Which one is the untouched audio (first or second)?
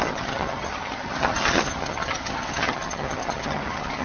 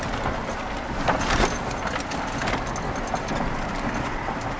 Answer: second